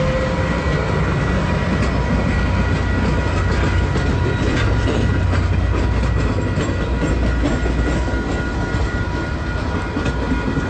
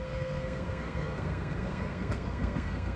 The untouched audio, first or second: first